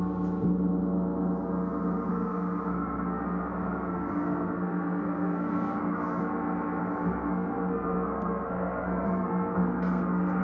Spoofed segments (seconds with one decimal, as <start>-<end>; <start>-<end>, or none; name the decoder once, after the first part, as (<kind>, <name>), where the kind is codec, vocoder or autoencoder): 2.1-6.2 (codec, SNAC); 6.8-10.4

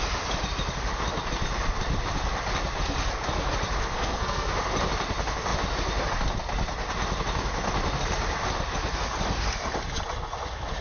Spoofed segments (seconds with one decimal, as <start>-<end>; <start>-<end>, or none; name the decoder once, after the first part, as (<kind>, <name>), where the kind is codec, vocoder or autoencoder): 3.9-4.5 (codec, SNAC)

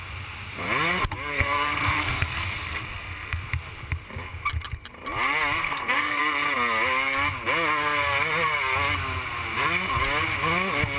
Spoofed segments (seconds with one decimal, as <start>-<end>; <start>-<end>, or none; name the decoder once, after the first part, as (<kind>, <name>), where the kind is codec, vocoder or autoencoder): 1.3-3.4 (codec, SNAC); 5.6-6.2

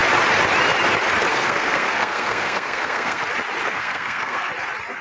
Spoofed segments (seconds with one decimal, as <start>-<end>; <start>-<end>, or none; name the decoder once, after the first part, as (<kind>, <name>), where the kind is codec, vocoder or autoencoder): 1.3-3.2 (codec, SNAC); 3.6-4.5

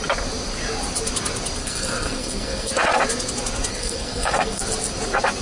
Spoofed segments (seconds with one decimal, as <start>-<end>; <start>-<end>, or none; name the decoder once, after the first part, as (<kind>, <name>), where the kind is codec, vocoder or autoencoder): 1.6-2.7 (codec, SNAC); 3.7-4.6

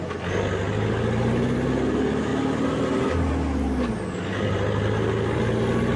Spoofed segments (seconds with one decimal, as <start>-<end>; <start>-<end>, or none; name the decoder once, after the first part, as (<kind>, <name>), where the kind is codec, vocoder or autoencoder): none

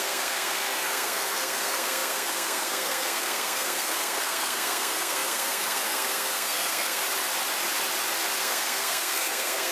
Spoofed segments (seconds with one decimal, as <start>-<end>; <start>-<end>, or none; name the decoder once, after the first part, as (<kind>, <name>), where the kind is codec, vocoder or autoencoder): 0.0-7.0 (codec, SNAC); 8.4-9.7